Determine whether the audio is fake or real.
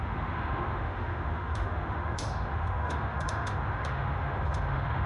fake